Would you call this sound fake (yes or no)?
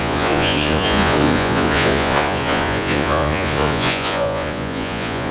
yes